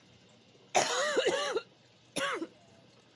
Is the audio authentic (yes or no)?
yes